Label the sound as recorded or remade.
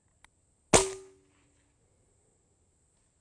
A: recorded